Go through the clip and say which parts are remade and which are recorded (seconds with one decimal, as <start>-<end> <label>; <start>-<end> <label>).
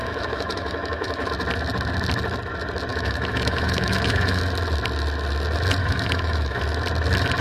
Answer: 0.0-1.3 remade; 1.3-2.9 recorded; 2.9-4.4 remade; 4.4-5.8 recorded; 5.8-6.6 remade; 6.6-7.4 recorded